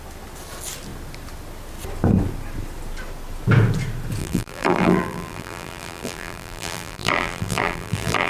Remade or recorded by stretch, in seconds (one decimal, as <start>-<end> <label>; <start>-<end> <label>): 0.0-4.2 recorded; 4.2-8.3 remade